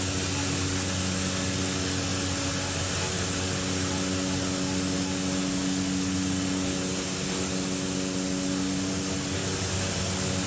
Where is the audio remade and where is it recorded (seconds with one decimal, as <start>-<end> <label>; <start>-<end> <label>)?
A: 0.0-10.5 recorded